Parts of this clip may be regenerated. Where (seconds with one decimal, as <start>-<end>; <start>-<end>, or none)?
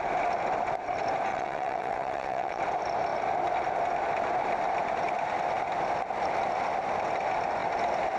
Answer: 1.3-2.6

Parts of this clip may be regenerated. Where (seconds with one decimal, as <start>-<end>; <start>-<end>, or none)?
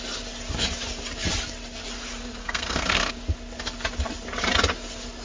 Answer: 2.4-3.1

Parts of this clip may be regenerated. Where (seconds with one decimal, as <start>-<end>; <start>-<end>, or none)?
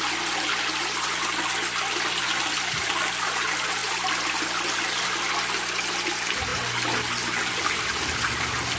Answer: none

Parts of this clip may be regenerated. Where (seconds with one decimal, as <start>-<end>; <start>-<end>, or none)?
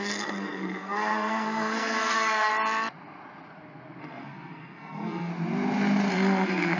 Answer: 0.0-2.5; 4.0-5.3; 6.1-6.8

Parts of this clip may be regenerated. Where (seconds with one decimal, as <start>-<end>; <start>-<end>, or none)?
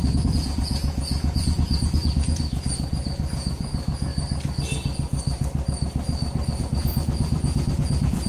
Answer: 0.0-4.1; 6.6-8.3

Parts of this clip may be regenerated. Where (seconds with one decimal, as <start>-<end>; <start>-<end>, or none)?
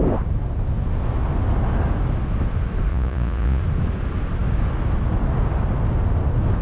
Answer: 2.9-3.6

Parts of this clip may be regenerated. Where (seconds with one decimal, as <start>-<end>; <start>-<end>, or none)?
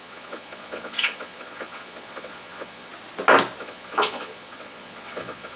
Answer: 0.0-2.9; 3.6-5.6